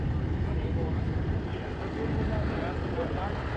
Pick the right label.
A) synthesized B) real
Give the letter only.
B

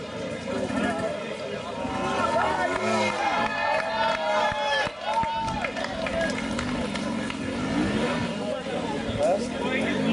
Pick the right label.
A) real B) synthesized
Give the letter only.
A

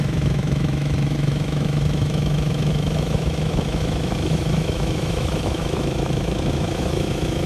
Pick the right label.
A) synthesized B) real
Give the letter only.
A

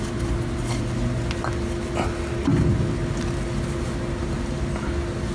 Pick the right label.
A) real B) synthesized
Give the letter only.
A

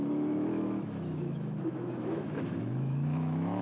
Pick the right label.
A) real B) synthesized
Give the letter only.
B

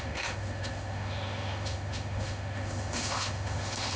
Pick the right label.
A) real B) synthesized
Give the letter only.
B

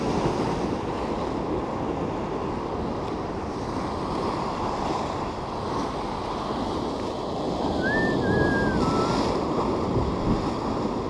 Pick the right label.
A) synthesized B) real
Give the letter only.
B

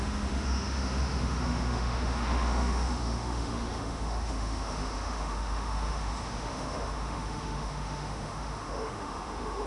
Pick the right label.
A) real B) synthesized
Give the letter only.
B